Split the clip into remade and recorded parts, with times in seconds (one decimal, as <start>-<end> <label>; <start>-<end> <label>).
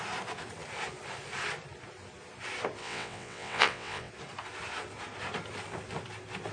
0.0-2.8 recorded; 2.8-4.1 remade; 4.1-6.5 recorded